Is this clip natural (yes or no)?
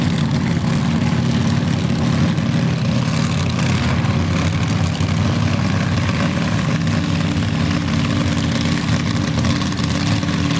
yes